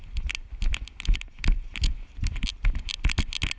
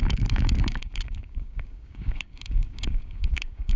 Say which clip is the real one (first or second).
first